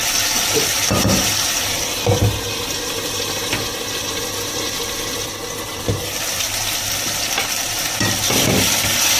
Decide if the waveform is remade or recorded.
recorded